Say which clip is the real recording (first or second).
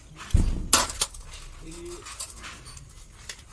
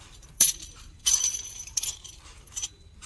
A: first